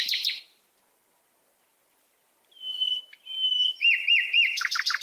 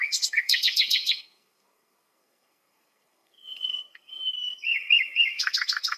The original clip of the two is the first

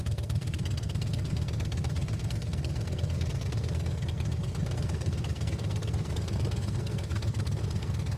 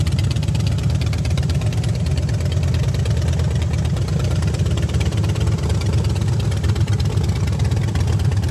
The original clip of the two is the second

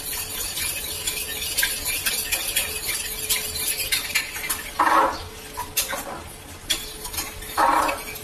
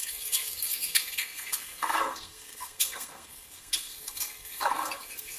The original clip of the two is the first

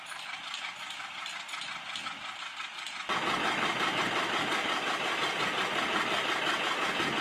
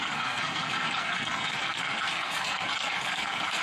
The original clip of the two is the first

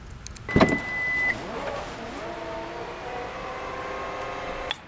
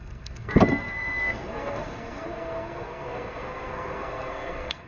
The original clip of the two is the first